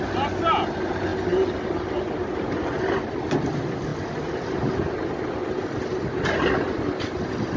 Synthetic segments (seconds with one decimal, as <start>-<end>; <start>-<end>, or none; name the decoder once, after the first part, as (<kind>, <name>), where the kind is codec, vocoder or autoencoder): none